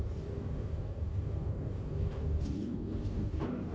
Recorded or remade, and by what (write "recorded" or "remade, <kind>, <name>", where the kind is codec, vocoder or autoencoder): remade, codec, DAC